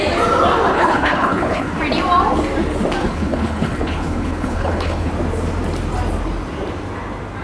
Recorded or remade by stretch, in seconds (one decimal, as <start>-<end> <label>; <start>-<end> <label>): 0.0-0.7 recorded; 0.7-1.8 remade; 1.8-3.0 recorded; 3.0-5.1 remade; 5.1-7.4 recorded